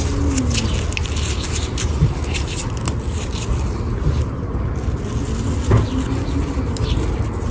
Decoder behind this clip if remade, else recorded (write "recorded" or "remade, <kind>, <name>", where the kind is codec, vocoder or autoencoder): recorded